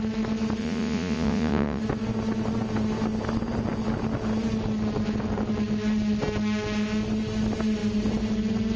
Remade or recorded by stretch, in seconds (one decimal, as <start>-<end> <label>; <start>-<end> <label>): 0.0-0.6 recorded; 0.6-1.8 remade; 1.8-8.8 recorded